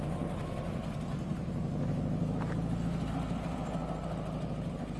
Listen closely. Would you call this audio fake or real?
real